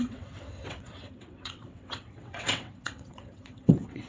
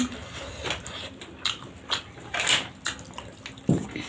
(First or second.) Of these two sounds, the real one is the second